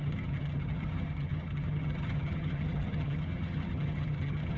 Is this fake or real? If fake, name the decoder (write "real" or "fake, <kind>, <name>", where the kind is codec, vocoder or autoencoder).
fake, vocoder, HiFi-GAN